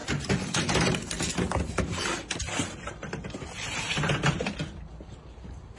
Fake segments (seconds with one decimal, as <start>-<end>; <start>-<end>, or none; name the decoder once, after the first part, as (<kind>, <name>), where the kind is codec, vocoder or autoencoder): none